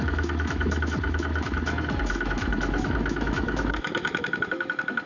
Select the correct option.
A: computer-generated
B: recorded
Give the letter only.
A